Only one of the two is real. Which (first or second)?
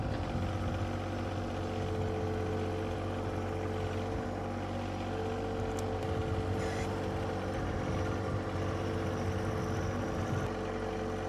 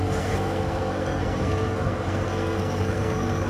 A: first